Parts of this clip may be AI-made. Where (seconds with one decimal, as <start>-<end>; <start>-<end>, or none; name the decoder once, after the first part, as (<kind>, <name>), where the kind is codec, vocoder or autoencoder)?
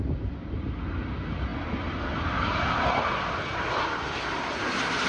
none